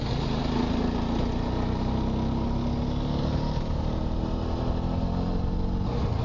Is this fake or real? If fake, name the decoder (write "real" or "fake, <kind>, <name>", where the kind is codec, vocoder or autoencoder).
real